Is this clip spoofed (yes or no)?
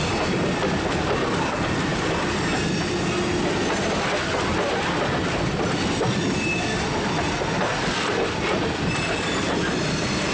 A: no